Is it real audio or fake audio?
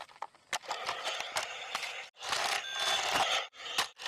real